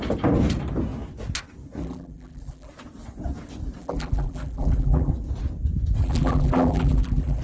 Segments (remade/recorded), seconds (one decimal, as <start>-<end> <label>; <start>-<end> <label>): 0.0-1.8 recorded; 1.8-2.7 remade; 2.7-3.8 recorded; 3.8-5.1 remade; 5.1-6.0 recorded; 6.0-7.4 remade

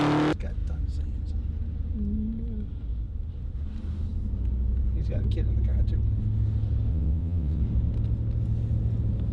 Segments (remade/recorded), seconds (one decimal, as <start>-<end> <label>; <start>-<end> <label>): 0.0-6.9 recorded; 6.9-7.6 remade; 7.6-9.3 recorded

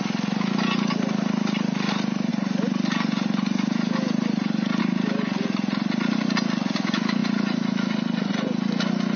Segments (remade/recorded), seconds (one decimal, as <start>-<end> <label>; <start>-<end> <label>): 0.0-9.2 recorded

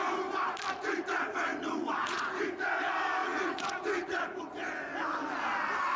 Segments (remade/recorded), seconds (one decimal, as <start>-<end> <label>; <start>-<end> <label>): 0.0-1.5 recorded; 1.5-2.7 remade; 2.7-3.2 recorded; 3.2-4.4 remade; 4.4-6.0 recorded

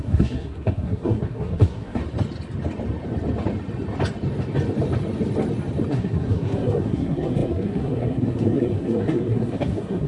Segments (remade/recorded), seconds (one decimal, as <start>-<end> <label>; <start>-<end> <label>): 0.0-2.0 remade; 2.0-5.9 recorded; 5.9-10.1 remade

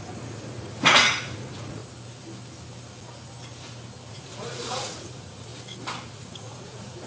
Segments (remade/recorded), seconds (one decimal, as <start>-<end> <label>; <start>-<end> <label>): 0.0-1.8 remade; 1.8-4.1 recorded; 4.1-5.5 remade; 5.5-6.1 recorded; 6.1-7.1 remade

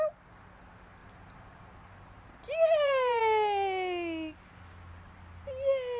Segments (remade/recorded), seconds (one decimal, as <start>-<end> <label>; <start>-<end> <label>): 0.0-1.0 recorded; 1.0-3.2 remade; 3.2-6.0 recorded